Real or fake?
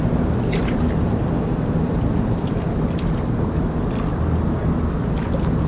real